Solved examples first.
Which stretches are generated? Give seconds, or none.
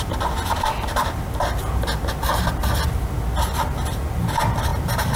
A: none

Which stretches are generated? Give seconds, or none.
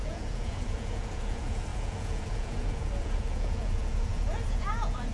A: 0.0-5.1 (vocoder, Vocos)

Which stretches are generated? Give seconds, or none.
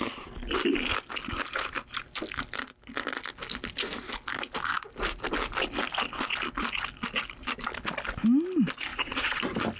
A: 8.9-9.4 (vocoder, Vocos)